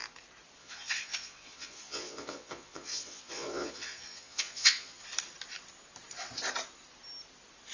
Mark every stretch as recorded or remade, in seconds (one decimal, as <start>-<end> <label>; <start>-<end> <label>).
0.0-0.6 recorded; 0.6-5.0 remade; 5.0-7.7 recorded